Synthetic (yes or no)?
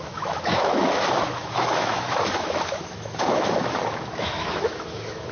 yes